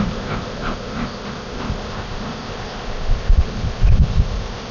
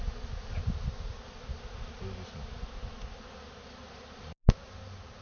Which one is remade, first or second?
first